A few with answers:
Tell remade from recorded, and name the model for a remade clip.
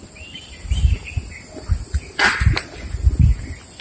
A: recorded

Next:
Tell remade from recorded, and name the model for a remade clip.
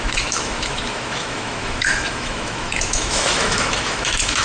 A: remade, autoencoder, DAC-VAE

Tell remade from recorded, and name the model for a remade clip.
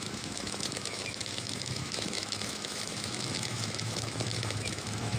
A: remade, autoencoder, DAC-VAE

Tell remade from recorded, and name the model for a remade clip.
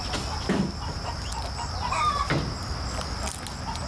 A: recorded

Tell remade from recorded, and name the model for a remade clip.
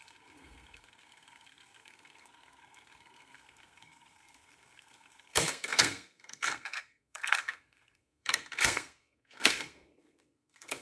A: remade, codec, SNAC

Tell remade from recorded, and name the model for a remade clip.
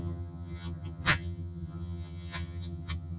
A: remade, vocoder, HiFi-GAN